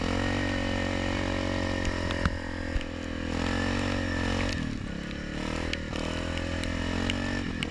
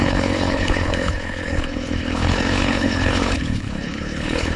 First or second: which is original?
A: first